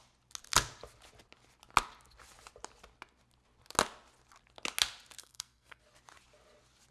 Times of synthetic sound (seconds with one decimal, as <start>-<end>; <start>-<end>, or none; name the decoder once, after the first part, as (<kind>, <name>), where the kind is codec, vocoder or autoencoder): 5.2-5.8 (codec, SNAC)